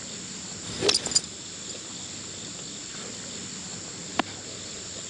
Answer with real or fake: real